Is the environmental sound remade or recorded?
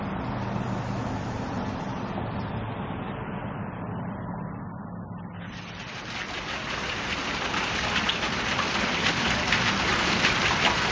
remade